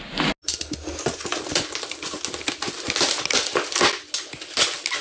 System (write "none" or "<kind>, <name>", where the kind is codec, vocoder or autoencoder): none